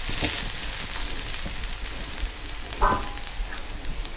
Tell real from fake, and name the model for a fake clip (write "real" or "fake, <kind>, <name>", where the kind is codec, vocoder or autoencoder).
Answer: real